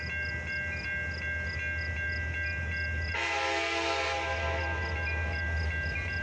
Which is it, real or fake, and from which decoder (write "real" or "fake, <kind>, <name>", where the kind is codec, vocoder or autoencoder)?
real